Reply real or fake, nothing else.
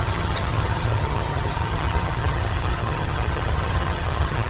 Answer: fake